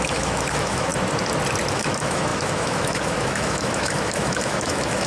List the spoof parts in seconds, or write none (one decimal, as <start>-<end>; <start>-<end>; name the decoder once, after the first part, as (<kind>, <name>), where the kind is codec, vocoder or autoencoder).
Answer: 0.0-0.9 (autoencoder, DAC-VAE); 1.7-5.1